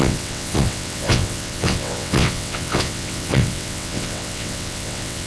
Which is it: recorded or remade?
remade